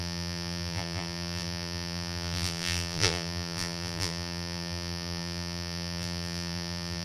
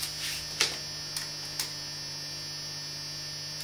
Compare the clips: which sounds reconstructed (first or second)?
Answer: first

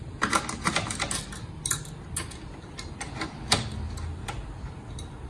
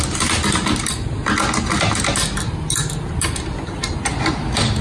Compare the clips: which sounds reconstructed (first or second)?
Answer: first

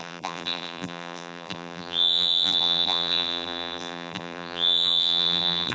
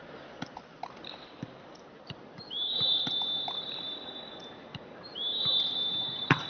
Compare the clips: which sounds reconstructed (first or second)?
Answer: first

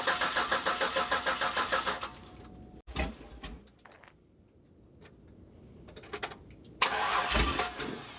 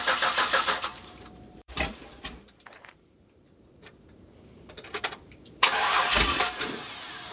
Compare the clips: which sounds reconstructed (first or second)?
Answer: second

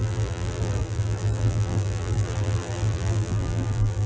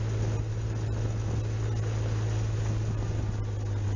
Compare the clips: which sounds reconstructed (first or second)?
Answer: first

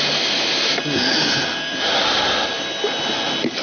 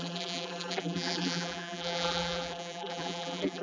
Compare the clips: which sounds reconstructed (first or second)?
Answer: second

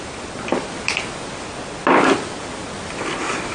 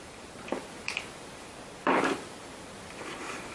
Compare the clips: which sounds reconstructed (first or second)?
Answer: second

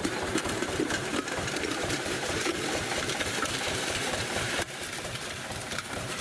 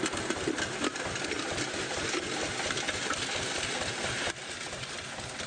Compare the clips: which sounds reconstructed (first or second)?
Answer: first